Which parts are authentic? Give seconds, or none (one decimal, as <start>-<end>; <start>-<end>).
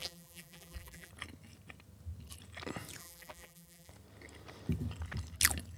1.1-3.0; 3.9-5.8